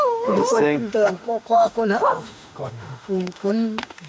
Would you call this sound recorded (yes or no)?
no